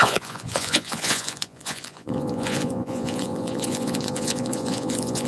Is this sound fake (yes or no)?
yes